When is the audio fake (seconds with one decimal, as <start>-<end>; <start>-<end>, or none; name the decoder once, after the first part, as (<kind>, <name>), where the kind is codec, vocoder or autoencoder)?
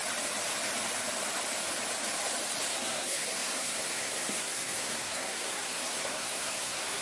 2.7-7.0 (codec, SNAC)